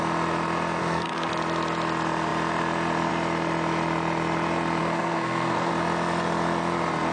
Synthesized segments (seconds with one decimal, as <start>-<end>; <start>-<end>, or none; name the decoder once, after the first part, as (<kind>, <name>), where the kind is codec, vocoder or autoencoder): 0.8-1.3 (codec, SNAC); 4.8-5.7